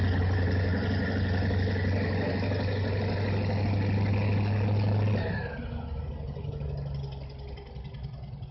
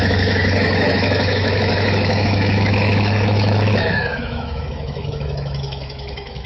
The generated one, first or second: second